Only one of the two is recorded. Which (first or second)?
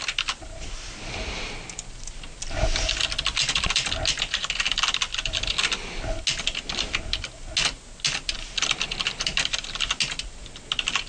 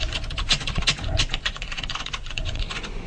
first